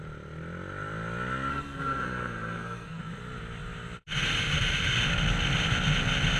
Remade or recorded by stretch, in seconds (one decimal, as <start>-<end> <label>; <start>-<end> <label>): 0.0-1.5 recorded; 1.5-3.0 remade; 3.0-6.4 recorded